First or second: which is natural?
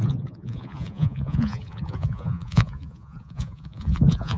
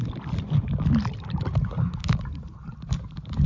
second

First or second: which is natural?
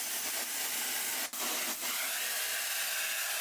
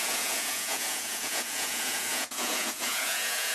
first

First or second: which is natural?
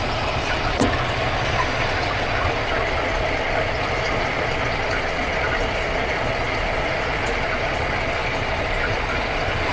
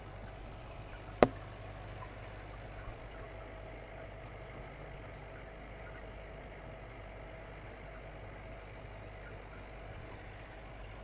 second